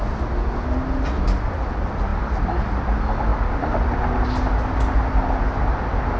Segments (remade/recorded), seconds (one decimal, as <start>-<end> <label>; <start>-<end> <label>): 0.0-6.2 recorded